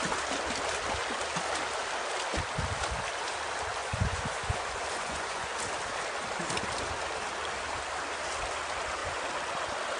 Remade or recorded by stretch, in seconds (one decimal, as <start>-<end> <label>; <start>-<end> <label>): 0.0-3.8 recorded; 3.8-5.5 remade; 5.5-10.0 recorded